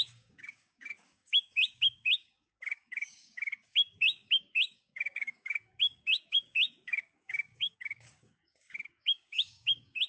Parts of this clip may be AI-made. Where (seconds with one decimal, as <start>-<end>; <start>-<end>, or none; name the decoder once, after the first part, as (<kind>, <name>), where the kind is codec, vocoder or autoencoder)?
0.0-10.1 (codec, DAC)